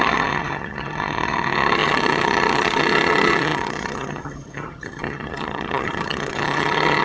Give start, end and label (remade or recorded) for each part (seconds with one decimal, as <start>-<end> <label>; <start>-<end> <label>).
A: 0.0-7.0 remade